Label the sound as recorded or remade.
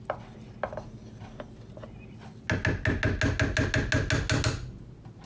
recorded